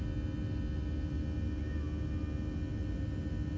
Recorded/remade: recorded